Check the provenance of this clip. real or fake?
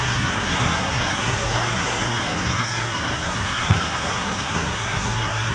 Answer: fake